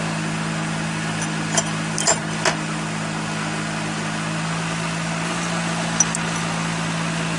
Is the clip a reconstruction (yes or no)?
no